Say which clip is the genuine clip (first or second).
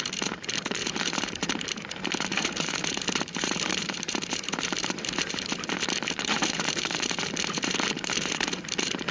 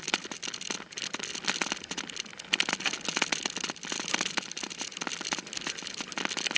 second